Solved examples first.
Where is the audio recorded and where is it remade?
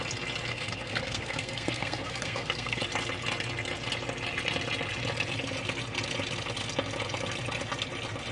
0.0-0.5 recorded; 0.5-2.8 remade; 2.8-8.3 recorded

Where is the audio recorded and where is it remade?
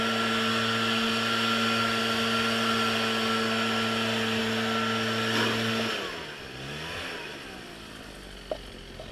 0.0-9.1 recorded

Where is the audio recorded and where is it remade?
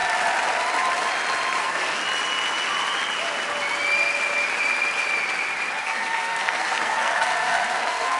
0.0-1.6 recorded; 1.6-2.0 remade; 2.0-5.8 recorded; 5.8-8.2 remade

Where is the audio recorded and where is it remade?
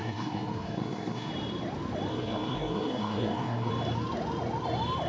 0.0-1.3 remade; 1.3-2.1 recorded; 2.1-3.7 remade; 3.7-5.1 recorded